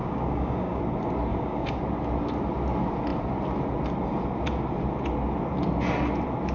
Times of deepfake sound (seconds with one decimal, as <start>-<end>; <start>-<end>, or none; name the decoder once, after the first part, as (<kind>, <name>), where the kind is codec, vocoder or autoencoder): 0.0-0.8 (codec, DAC); 1.3-1.8